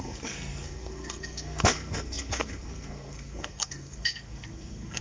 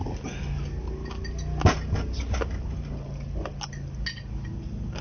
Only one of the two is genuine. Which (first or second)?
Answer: second